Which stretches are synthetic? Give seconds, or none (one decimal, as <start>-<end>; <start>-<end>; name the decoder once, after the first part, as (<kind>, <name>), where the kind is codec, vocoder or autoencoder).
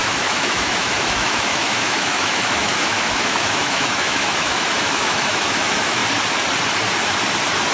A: 0.0-6.0 (autoencoder, DAC-VAE)